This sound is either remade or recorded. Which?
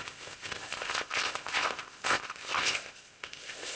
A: remade